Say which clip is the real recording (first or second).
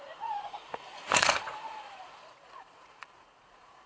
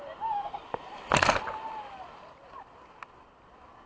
second